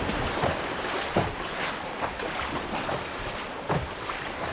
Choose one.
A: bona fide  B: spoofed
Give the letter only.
B